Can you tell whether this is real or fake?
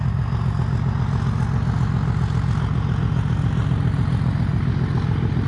real